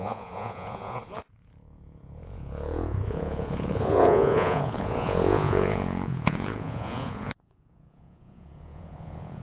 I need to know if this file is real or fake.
fake